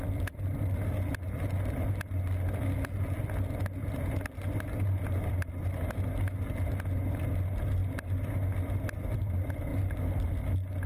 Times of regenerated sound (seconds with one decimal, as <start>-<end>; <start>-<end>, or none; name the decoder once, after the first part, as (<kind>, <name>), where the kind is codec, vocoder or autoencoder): 3.8-6.0 (vocoder, BigVGAN v2)